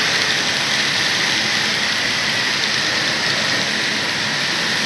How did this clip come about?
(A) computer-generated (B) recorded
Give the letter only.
B